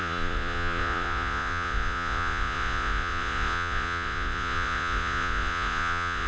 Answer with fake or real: fake